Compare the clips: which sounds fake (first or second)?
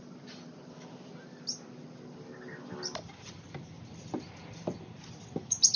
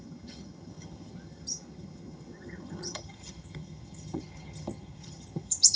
second